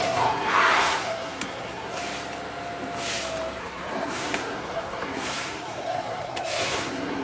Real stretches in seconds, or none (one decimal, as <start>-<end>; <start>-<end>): 2.0-3.6

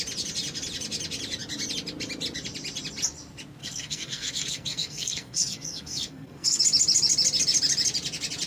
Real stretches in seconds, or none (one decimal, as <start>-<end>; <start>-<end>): 0.0-3.6; 6.6-8.5